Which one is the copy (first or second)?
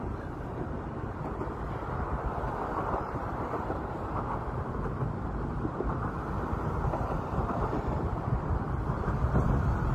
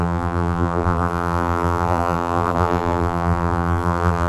second